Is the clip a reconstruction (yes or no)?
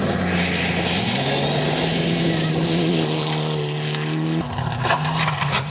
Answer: no